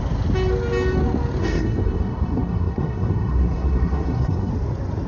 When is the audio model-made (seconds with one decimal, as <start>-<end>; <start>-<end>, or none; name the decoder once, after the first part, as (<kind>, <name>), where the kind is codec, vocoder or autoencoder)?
1.4-4.5 (codec, SNAC)